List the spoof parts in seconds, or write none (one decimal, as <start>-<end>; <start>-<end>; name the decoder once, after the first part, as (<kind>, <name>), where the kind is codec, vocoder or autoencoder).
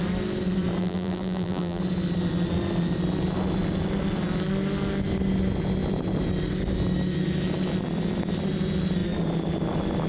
0.8-1.8 (vocoder, BigVGAN v2)